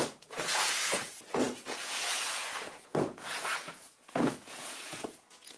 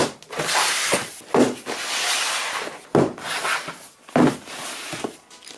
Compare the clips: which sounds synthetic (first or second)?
first